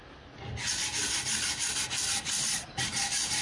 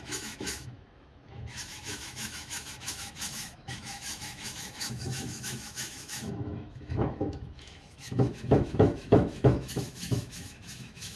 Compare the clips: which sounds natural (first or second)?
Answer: first